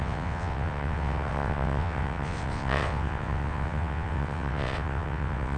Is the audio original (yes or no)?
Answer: no